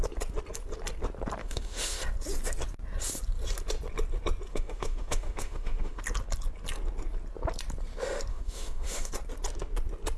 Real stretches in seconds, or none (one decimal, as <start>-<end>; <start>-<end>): 0.0-1.4; 2.0-4.5; 6.0-8.3; 9.1-10.2